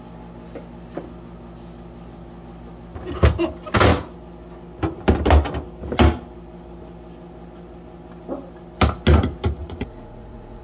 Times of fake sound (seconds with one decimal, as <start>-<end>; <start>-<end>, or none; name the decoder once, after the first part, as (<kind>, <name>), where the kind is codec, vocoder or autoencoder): 9.6-10.6 (vocoder, Vocos)